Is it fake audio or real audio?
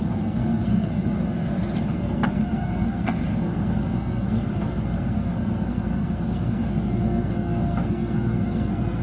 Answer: fake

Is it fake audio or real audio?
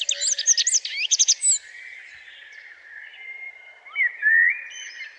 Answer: real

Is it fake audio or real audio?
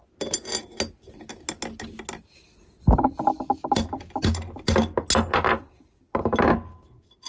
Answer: real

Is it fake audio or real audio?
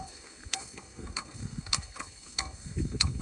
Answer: fake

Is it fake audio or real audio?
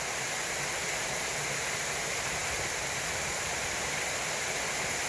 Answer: real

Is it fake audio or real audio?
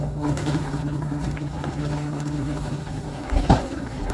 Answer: fake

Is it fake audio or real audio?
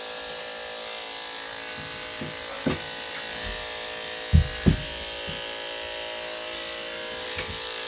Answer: real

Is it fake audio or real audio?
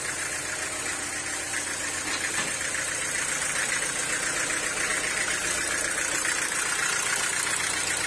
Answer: real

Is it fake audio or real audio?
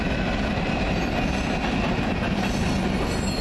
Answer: real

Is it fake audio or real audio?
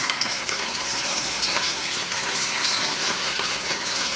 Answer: fake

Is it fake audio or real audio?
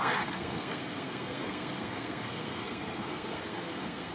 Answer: fake